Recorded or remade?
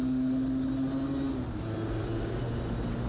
recorded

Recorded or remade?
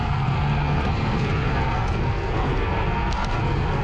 remade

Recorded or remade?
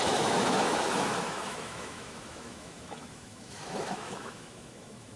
remade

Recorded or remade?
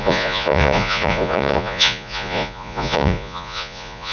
remade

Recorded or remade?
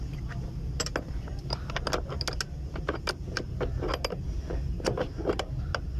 recorded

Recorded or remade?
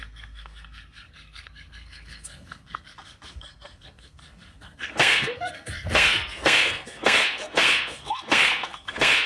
remade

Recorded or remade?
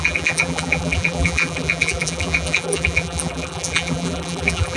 remade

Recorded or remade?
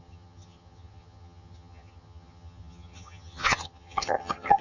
remade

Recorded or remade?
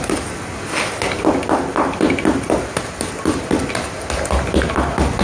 recorded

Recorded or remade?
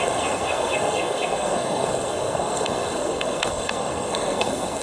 remade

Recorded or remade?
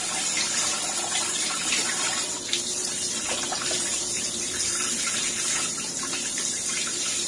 remade